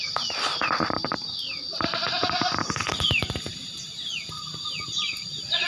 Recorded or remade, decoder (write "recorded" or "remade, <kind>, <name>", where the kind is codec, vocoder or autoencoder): recorded